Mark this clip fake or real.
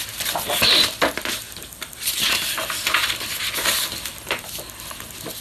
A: real